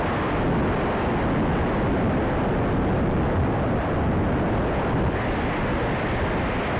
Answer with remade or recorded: recorded